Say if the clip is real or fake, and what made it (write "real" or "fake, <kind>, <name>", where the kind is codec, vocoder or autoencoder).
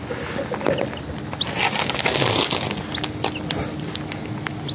real